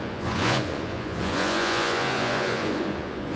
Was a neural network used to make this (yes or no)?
yes